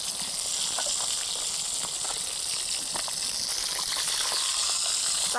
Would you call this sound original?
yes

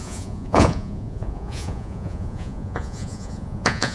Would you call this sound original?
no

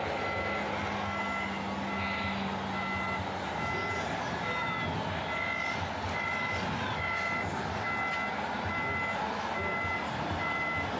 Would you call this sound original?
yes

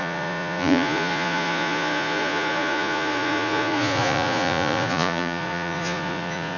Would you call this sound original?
no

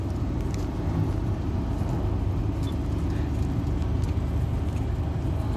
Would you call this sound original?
yes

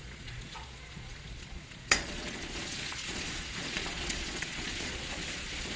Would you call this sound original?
no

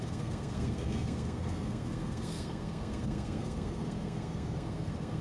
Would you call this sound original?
no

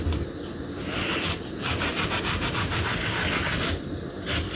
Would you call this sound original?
yes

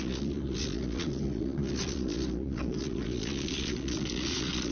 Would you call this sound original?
no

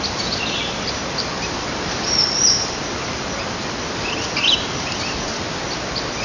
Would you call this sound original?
no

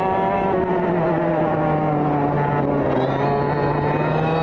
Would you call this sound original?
yes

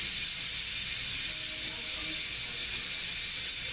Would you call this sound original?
yes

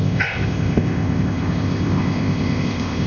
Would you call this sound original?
no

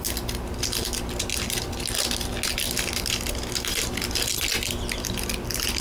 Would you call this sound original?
yes